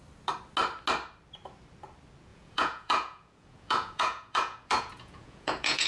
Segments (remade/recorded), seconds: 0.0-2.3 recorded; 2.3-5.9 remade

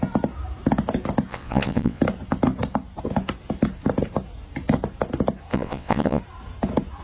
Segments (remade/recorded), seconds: 0.0-1.3 recorded; 1.3-2.0 remade; 2.0-5.5 recorded; 5.5-6.2 remade; 6.2-7.0 recorded

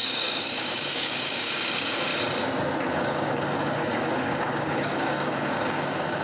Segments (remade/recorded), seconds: 0.0-2.1 remade; 2.1-2.9 recorded; 2.9-6.2 remade

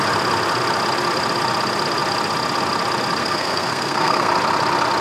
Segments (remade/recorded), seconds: 0.0-3.2 recorded; 3.2-4.3 remade; 4.3-5.0 recorded

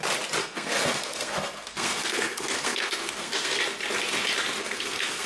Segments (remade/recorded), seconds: 0.0-0.4 recorded; 0.4-3.6 remade; 3.6-4.6 recorded; 4.6-5.3 remade

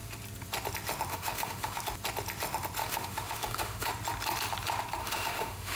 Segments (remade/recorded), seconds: 0.0-1.1 recorded; 1.1-1.8 remade; 1.8-2.8 recorded; 2.8-3.9 remade; 3.9-5.0 recorded; 5.0-5.8 remade

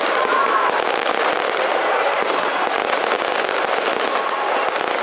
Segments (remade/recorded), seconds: 0.0-5.0 recorded

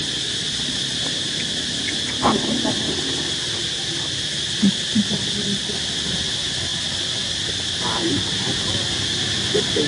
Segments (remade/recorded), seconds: 0.0-9.9 recorded